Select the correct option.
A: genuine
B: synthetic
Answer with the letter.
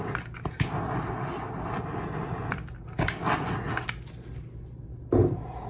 A